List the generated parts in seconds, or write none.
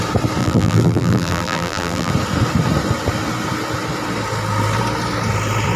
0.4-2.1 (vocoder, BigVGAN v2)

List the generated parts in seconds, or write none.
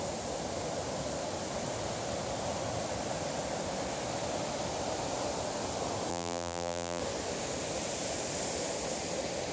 6.1-7.0 (vocoder, BigVGAN v2)